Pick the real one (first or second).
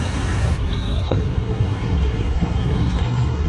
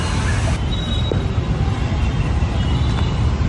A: second